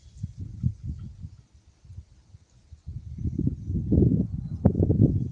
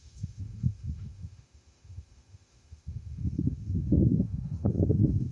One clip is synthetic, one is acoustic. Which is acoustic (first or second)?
first